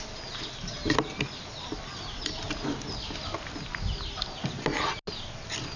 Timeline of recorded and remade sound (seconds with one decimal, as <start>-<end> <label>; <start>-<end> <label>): 0.0-5.8 recorded